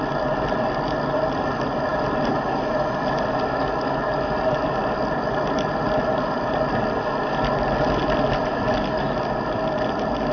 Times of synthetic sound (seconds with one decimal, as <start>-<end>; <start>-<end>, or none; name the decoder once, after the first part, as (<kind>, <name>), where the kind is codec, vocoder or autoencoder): none